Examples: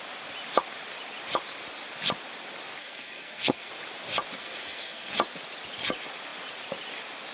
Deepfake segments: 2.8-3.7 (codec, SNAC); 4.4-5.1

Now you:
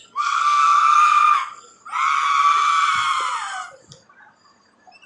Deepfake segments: 0.0-1.8 (codec, SNAC)